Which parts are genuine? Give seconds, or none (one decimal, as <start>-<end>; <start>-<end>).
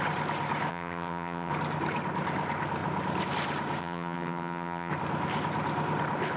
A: 0.0-0.7; 1.5-3.8; 4.9-6.4